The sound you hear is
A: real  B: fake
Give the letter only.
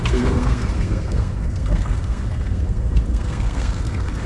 B